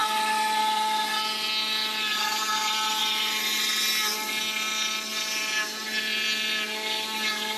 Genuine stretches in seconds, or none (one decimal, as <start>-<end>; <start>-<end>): 0.0-7.6